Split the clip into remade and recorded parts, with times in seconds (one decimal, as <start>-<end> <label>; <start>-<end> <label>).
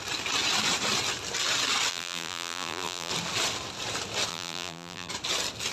0.0-1.9 recorded; 1.9-3.1 remade; 3.1-4.3 recorded; 4.3-5.1 remade; 5.1-5.7 recorded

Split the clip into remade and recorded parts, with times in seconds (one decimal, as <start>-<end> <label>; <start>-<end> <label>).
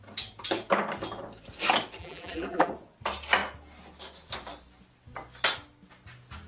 0.0-2.0 recorded; 2.0-2.7 remade; 2.7-6.5 recorded